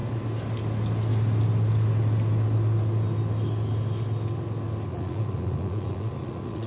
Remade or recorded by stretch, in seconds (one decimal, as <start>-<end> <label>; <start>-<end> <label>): 0.0-4.9 recorded; 4.9-6.7 remade

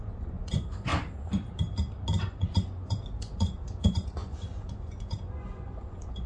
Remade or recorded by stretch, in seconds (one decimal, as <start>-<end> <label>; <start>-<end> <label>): 0.0-0.9 remade; 0.9-2.2 recorded; 2.2-6.3 remade

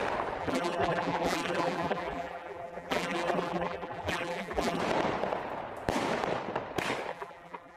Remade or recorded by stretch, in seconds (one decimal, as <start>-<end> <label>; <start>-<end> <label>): 0.0-0.4 recorded; 0.4-4.8 remade; 4.8-7.1 recorded; 7.1-7.8 remade